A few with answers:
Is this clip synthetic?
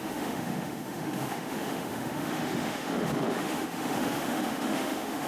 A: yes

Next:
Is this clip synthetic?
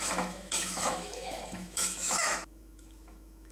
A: yes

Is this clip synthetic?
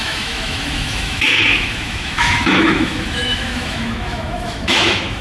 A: yes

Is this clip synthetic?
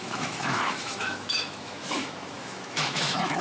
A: yes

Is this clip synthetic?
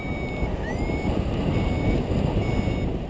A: no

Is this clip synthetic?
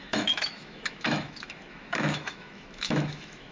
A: yes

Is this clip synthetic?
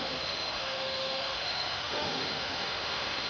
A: yes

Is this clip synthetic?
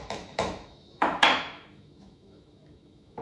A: yes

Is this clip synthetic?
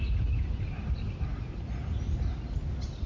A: no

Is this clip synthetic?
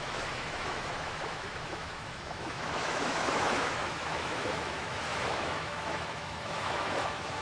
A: yes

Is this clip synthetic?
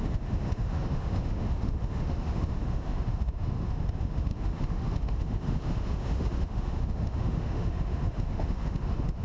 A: yes